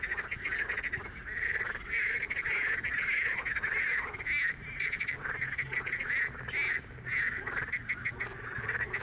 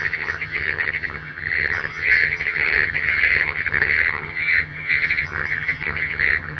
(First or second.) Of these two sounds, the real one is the first